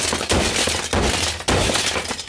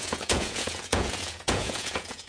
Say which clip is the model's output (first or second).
second